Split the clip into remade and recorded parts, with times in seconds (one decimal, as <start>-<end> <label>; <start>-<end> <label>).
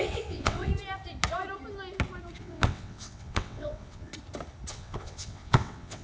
0.0-0.7 remade; 0.7-2.4 recorded; 2.4-4.1 remade; 4.1-4.7 recorded; 4.7-6.0 remade